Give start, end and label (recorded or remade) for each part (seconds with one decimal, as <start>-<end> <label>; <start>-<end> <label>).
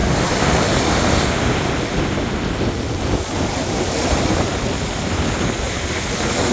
0.0-6.5 recorded